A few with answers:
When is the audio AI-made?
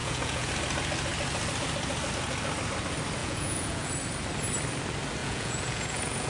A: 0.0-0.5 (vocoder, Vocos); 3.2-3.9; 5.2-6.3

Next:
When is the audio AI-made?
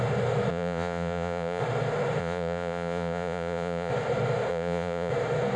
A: 0.5-1.6 (vocoder, Vocos); 2.2-3.9; 4.5-5.1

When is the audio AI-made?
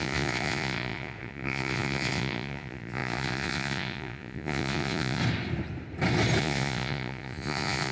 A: 0.0-5.2 (vocoder, Vocos); 6.4-7.9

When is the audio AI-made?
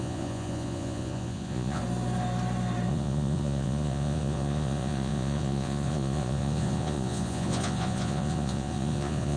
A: 0.0-1.8 (vocoder, Vocos); 2.9-9.4